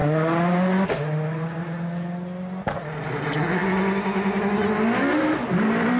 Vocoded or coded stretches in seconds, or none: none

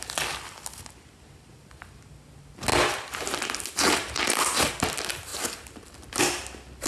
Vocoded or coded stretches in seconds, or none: none

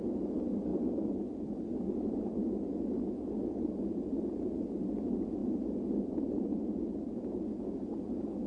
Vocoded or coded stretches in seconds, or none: none

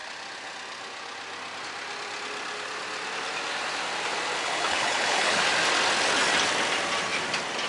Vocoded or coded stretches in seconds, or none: 4.4-5.4 (codec, HILCodec)

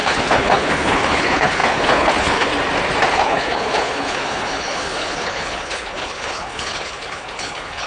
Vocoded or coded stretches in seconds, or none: 0.0-2.5 (codec, HILCodec); 3.1-7.9

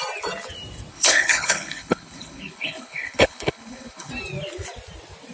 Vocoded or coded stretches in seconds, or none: 0.9-4.1 (codec, HILCodec)

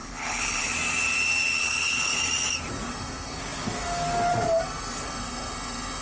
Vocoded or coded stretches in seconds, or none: 0.0-0.7 (codec, HILCodec); 1.6-2.2

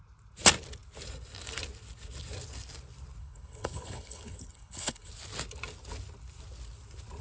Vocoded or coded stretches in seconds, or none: 3.2-5.1 (codec, HILCodec)